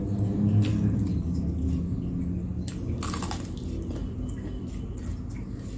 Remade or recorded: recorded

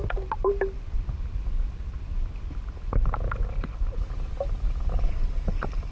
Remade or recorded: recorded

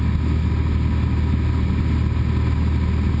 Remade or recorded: recorded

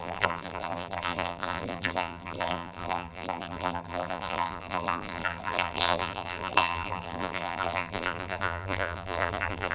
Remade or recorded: remade